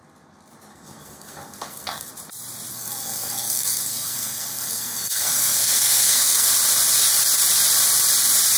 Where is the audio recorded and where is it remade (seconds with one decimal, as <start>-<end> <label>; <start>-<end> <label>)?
0.0-0.7 recorded; 0.7-2.1 remade; 2.1-2.7 recorded; 2.7-6.5 remade; 6.5-8.6 recorded